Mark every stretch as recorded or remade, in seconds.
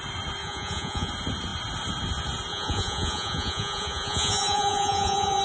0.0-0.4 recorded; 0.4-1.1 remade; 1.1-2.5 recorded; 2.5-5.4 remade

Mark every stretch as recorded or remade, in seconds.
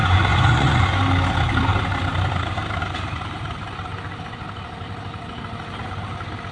0.0-1.0 remade; 1.0-6.5 recorded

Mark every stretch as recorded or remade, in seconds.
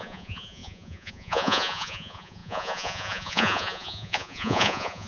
0.0-5.1 remade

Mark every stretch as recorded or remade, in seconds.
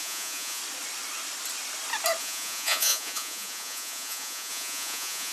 0.0-0.6 remade; 0.6-2.2 recorded; 2.2-5.3 remade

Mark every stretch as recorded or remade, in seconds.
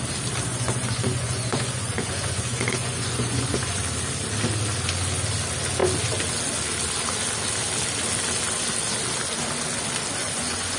0.0-0.5 recorded; 0.5-3.8 remade; 3.8-10.2 recorded; 10.2-10.8 remade